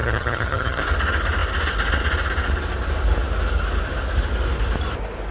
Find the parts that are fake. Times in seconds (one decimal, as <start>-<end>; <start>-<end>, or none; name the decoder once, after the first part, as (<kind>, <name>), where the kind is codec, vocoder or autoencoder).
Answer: 0.0-0.8 (vocoder, HiFi-GAN)